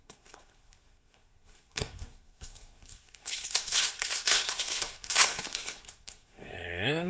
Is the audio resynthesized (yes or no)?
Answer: yes